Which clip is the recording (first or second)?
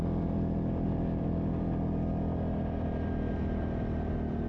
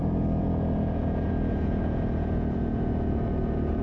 first